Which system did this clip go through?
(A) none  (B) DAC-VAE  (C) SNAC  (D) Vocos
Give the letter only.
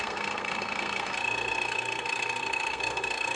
C